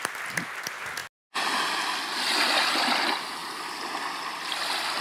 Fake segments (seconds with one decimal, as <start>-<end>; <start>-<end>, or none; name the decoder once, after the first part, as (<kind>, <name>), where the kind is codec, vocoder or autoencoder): none